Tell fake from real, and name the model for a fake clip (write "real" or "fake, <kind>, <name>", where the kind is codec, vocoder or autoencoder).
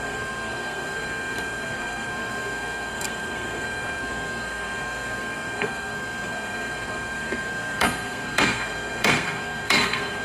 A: fake, codec, SNAC